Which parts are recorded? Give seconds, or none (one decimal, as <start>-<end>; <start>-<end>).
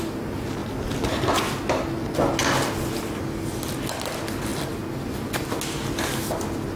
0.0-0.6; 1.4-6.8